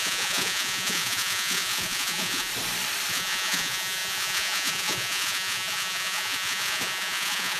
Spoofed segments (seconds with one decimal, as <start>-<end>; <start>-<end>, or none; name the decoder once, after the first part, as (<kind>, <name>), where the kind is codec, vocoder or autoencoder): 0.0-2.5 (vocoder, Vocos); 3.1-7.6